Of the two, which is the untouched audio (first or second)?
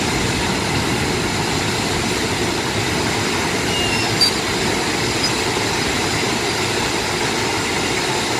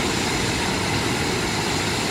second